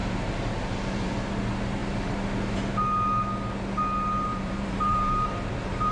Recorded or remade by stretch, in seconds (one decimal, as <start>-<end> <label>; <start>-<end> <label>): 0.0-1.2 remade; 1.2-4.3 recorded; 4.3-5.9 remade